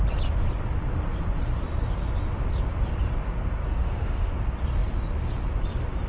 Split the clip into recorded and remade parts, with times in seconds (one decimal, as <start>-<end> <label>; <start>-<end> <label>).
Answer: 0.0-3.7 recorded; 3.7-4.3 remade; 4.3-6.1 recorded